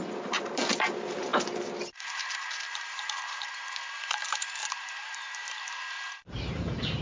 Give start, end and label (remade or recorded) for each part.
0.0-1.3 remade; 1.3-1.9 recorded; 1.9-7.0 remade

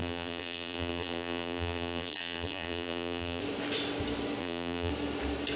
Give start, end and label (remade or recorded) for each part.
0.0-3.4 remade; 3.4-4.4 recorded; 4.4-4.9 remade; 4.9-5.6 recorded

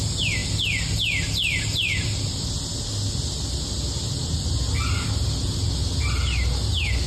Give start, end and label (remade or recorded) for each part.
0.0-7.1 recorded

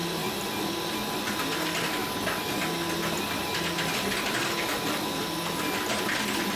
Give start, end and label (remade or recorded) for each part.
0.0-1.2 recorded; 1.2-2.0 remade; 2.0-6.0 recorded; 6.0-6.6 remade

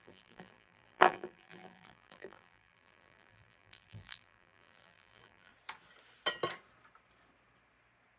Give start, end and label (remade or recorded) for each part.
0.0-5.5 remade; 5.5-8.2 recorded

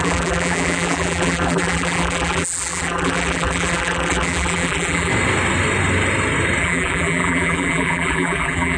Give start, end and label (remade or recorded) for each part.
0.0-5.1 remade; 5.1-6.6 recorded; 6.6-8.8 remade

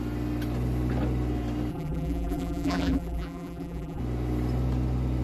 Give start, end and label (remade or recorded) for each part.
0.0-1.7 recorded; 1.7-4.0 remade; 4.0-5.2 recorded